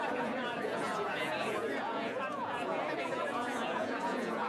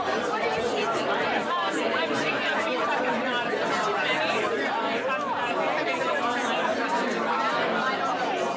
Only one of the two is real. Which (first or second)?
second